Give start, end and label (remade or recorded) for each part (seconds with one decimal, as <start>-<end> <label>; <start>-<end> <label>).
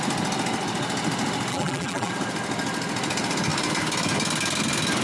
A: 0.0-1.5 recorded; 1.5-2.1 remade; 2.1-5.0 recorded